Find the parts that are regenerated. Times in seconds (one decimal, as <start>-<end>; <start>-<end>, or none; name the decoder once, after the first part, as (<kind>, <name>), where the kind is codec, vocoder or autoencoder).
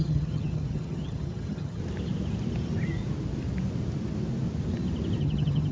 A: 0.0-1.8 (vocoder, HiFi-GAN); 5.2-5.7